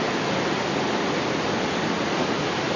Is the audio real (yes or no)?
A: yes